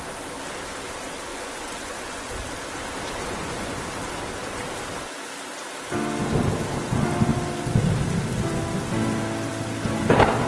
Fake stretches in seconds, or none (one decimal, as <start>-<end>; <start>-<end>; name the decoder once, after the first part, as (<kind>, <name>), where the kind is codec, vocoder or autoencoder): 1.3-2.3 (vocoder, Vocos); 3.2-3.8